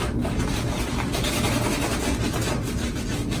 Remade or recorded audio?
recorded